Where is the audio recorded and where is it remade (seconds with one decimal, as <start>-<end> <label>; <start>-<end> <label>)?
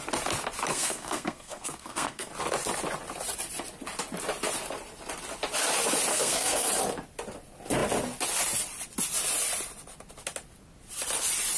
0.0-0.7 recorded; 0.7-2.3 remade; 2.3-6.1 recorded; 6.1-6.7 remade; 6.7-11.6 recorded